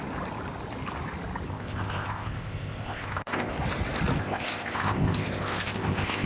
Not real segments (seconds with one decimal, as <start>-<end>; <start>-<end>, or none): 1.5-3.5; 4.2-6.3